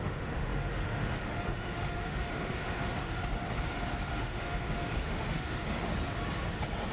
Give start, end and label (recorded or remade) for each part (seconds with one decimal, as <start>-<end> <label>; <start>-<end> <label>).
0.0-3.2 remade; 3.2-4.2 recorded; 4.2-5.9 remade; 5.9-6.9 recorded